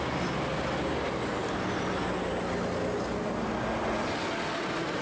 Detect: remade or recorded recorded